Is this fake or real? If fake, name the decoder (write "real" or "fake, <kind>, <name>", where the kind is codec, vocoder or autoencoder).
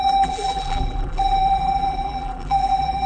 fake, vocoder, BigVGAN v2